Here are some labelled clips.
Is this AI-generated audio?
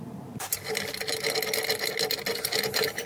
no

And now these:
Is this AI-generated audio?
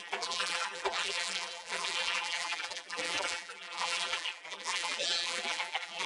yes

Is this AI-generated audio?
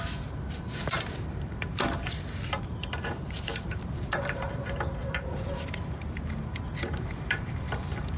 yes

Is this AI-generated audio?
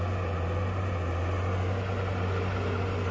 no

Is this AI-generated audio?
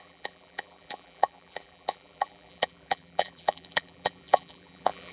yes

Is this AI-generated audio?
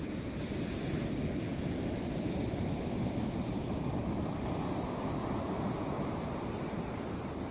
no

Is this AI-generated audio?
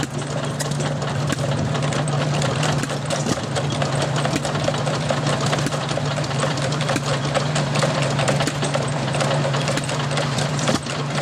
yes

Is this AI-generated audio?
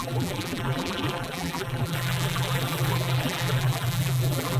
yes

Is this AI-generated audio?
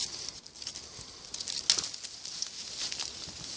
no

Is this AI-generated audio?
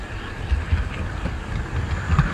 yes